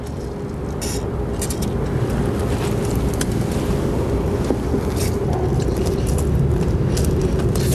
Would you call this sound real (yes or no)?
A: yes